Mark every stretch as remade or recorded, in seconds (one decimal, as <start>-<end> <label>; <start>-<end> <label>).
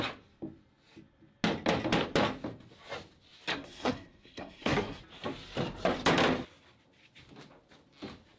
0.0-3.5 recorded; 3.5-5.0 remade; 5.0-8.4 recorded